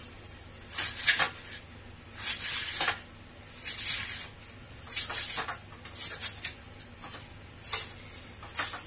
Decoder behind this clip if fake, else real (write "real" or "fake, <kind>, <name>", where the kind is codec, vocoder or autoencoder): real